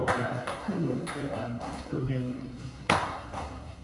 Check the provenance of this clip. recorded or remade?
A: remade